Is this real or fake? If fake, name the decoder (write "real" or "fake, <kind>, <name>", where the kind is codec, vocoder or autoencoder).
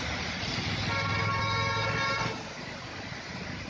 real